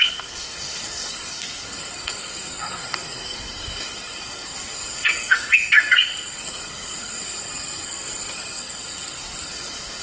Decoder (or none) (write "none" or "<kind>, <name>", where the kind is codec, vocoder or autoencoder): codec, SNAC